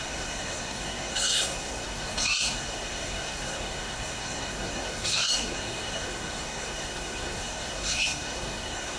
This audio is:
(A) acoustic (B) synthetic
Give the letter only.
B